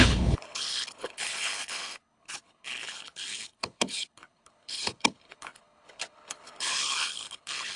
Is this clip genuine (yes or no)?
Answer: no